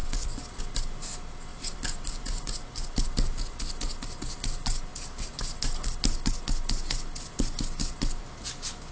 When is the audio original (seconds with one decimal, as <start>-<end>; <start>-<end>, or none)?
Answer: 0.0-1.5; 2.5-8.9